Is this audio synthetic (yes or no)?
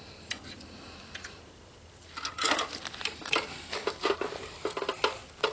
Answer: no